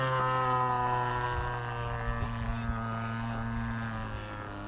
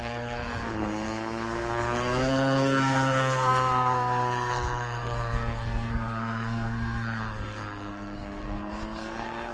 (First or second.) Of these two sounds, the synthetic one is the second